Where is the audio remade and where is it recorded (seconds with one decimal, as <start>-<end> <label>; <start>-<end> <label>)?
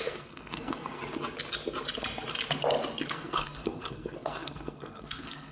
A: 0.0-1.0 remade; 1.0-3.1 recorded; 3.1-5.5 remade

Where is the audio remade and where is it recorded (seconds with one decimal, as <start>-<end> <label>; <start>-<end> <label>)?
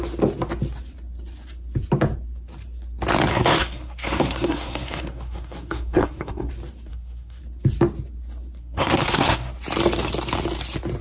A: 0.0-3.3 recorded; 3.3-6.5 remade; 6.5-6.9 recorded; 6.9-7.4 remade; 7.4-8.6 recorded; 8.6-9.5 remade; 9.5-11.0 recorded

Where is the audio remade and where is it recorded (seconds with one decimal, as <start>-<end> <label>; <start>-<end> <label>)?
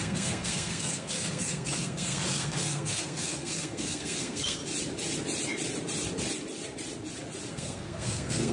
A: 0.0-4.6 remade; 4.6-7.5 recorded; 7.5-8.5 remade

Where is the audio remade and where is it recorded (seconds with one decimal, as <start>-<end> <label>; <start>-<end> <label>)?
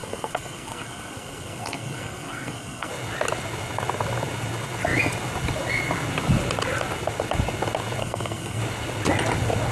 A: 0.0-2.9 remade; 2.9-8.0 recorded; 8.0-8.6 remade; 8.6-9.7 recorded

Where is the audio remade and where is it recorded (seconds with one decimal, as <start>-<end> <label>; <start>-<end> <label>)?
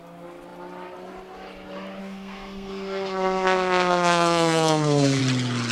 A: 0.0-2.0 recorded; 2.0-5.2 remade; 5.2-5.7 recorded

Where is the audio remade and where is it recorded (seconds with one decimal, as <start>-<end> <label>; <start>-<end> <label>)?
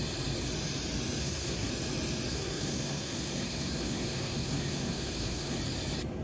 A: 0.0-1.2 recorded; 1.2-1.7 remade; 1.7-2.3 recorded; 2.3-5.6 remade; 5.6-6.2 recorded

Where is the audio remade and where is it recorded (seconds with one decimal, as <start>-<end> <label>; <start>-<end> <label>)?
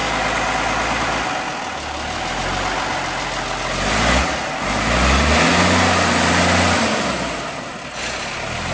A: 0.0-8.7 recorded